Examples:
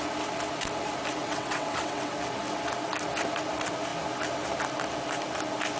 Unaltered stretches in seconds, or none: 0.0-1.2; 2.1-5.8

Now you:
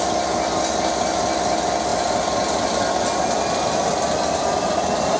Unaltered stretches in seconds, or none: 0.0-5.2

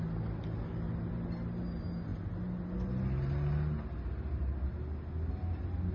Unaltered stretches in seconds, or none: 0.0-5.9

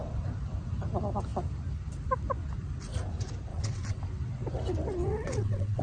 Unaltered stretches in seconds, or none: 0.0-3.5; 4.0-5.0

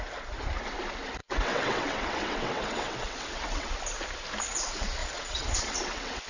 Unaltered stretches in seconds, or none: 0.0-1.2; 3.7-5.0

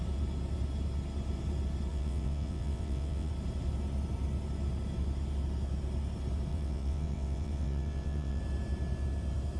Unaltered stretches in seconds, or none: 0.0-1.9; 3.3-6.5; 8.4-9.6